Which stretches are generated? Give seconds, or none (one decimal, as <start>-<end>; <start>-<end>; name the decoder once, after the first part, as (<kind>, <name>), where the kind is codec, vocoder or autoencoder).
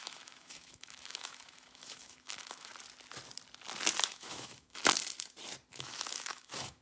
0.0-2.7 (autoencoder, DAC-VAE); 4.1-4.8; 5.7-6.8